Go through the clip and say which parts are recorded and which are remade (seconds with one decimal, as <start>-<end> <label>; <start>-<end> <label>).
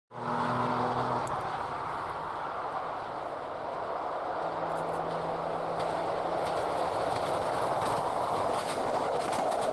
0.0-8.1 recorded; 8.1-9.0 remade; 9.0-9.7 recorded